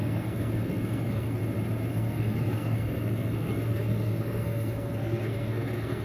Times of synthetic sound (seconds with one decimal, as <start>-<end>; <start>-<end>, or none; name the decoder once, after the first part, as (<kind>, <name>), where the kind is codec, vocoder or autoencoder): 0.0-1.4 (codec, SNAC); 1.9-6.0